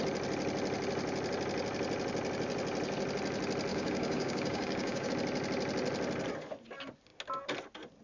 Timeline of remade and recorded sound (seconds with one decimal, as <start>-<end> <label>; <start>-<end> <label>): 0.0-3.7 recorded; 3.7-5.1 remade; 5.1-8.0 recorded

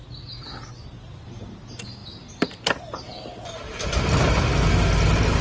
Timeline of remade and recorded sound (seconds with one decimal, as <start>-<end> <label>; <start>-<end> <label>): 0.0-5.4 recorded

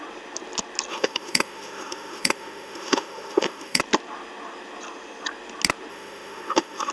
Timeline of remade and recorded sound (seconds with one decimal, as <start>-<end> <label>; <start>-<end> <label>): 0.0-0.9 recorded; 0.9-3.8 remade; 3.8-5.9 recorded; 5.9-6.9 remade

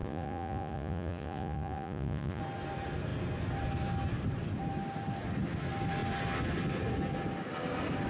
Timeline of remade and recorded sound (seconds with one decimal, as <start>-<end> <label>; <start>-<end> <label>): 0.0-2.4 remade; 2.4-8.1 recorded

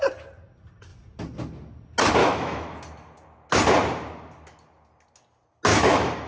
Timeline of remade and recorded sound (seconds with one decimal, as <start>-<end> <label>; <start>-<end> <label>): 0.0-2.2 recorded; 2.2-2.8 remade; 2.8-5.7 recorded; 5.7-6.3 remade